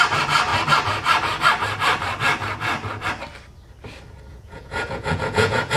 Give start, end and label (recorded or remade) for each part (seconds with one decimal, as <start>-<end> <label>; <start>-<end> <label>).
0.0-4.3 recorded; 4.3-5.8 remade